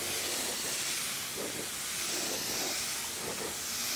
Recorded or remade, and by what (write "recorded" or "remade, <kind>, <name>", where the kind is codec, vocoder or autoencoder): recorded